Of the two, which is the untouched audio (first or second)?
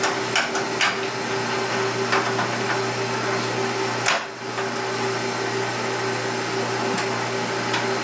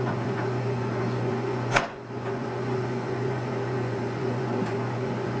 first